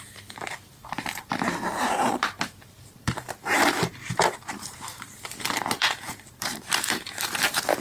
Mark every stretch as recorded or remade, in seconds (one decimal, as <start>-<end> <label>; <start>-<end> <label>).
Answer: 0.0-7.8 remade